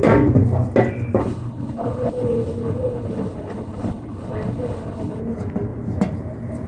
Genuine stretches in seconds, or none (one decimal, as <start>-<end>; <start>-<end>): 0.0-1.2; 5.2-6.7